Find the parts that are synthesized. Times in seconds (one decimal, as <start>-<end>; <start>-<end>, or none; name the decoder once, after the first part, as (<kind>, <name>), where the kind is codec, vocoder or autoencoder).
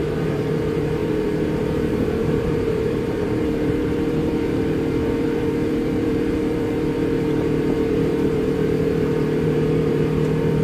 0.0-10.6 (vocoder, BigVGAN v2)